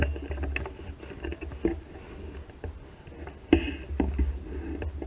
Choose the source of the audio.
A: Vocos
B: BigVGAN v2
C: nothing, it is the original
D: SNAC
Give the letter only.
C